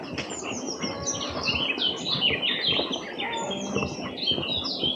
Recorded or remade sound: recorded